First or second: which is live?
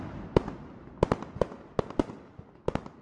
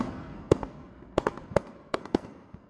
first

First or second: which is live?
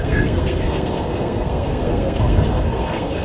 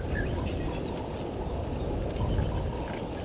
second